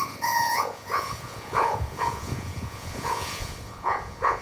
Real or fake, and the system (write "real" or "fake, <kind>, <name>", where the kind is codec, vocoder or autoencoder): fake, vocoder, Vocos